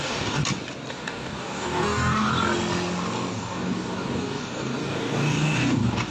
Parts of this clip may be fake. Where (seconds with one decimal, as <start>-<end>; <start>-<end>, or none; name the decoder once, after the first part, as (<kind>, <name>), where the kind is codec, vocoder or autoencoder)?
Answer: 0.0-0.4 (codec, DAC); 0.9-2.3; 3.3-6.1